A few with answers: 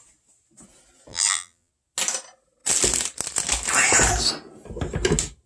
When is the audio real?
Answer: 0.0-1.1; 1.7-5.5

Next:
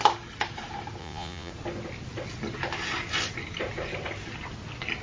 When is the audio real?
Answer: 0.0-1.0; 1.5-5.0

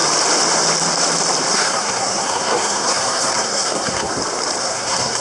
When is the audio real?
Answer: 0.0-1.5; 4.1-4.6

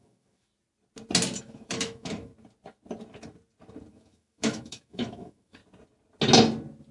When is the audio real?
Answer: 0.5-1.4; 2.3-3.9; 5.6-6.9